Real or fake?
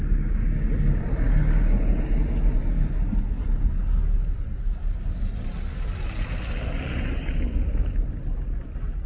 real